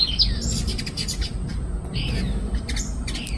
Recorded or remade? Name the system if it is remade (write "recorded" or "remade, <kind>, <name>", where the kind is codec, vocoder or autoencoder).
recorded